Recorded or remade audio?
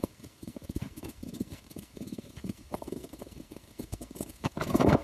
remade